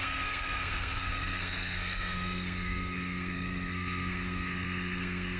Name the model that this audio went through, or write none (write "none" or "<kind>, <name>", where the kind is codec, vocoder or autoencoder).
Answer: codec, SNAC